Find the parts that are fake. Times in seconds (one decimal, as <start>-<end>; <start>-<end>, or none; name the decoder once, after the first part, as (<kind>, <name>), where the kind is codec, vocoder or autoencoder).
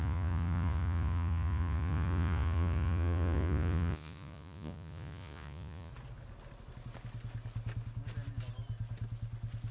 0.0-5.9 (vocoder, Vocos)